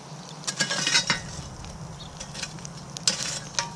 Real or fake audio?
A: real